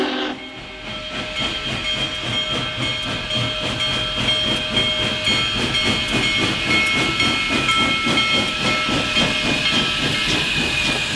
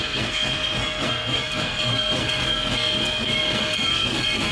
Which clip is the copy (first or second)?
second